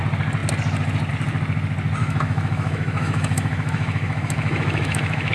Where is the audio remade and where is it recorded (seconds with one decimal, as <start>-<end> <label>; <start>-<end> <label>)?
0.0-2.0 recorded; 2.0-5.3 remade